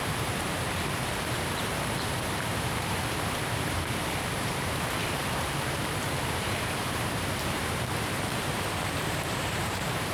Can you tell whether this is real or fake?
fake